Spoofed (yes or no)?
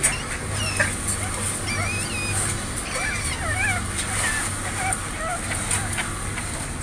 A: no